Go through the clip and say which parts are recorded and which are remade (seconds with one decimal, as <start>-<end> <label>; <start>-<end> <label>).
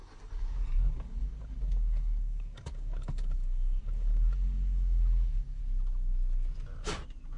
0.0-5.6 remade; 5.6-7.4 recorded